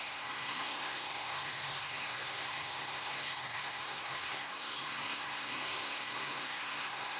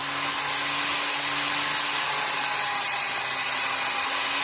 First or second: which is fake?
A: first